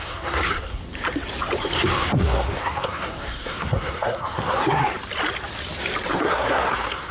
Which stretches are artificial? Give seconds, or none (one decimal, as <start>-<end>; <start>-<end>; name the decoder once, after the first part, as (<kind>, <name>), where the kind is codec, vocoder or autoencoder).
0.0-0.8 (codec, SNAC); 1.6-4.8; 6.1-7.1